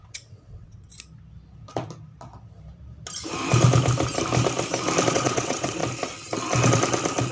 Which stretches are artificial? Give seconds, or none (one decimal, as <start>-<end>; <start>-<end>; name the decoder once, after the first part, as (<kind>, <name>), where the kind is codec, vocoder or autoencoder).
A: 0.0-0.9 (vocoder, WaveNeXt); 5.1-5.8